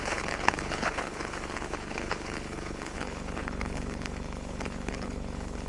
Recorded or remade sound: remade